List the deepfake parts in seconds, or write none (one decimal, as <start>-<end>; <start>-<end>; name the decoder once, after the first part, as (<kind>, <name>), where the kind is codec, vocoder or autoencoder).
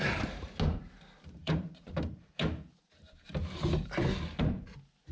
none